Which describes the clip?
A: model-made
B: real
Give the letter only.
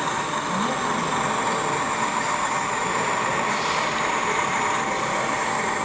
B